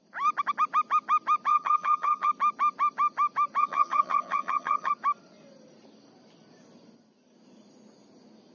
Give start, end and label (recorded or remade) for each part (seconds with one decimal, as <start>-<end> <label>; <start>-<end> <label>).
0.0-1.5 recorded; 1.5-2.3 remade; 2.3-3.6 recorded; 3.6-4.9 remade; 4.9-8.5 recorded